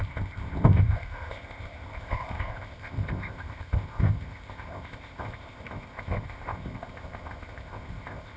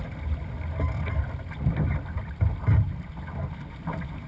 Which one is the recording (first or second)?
second